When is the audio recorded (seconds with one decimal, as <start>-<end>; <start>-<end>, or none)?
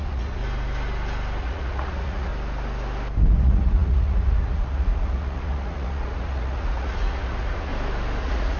0.4-1.4; 2.3-3.4; 7.7-8.2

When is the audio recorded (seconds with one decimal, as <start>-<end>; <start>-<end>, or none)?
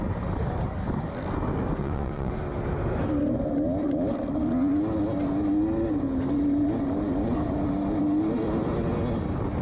0.0-1.8; 2.3-9.6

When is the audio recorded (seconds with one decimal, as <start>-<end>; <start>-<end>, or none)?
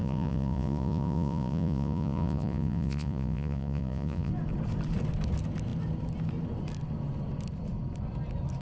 4.3-8.6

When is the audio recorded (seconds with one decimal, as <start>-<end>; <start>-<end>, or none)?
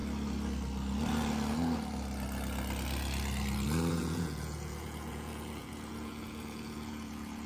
0.0-3.9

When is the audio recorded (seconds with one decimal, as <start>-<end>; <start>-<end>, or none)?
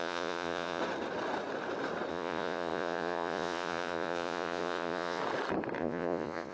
0.8-2.1; 5.2-5.8